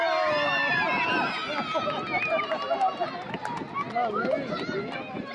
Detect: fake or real real